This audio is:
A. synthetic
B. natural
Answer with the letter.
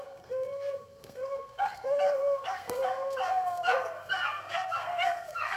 A